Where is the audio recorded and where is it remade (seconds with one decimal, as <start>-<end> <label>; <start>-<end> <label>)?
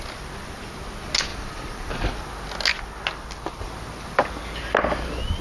0.0-1.3 recorded; 1.3-2.1 remade; 2.1-5.4 recorded